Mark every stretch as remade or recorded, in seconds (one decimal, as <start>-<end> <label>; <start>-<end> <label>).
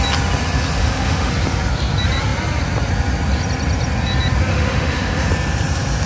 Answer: 0.0-0.8 recorded; 0.8-1.3 remade; 1.3-4.5 recorded; 4.5-5.3 remade; 5.3-6.1 recorded